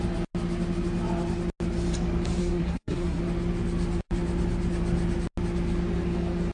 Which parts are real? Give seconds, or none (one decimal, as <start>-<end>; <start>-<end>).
0.0-2.4; 3.2-6.5